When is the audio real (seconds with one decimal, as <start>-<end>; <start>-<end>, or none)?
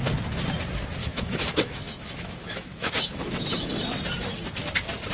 0.0-1.0; 3.7-5.1